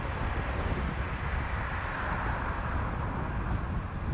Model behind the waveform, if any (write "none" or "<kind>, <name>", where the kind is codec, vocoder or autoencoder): none